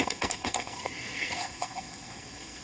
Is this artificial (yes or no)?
yes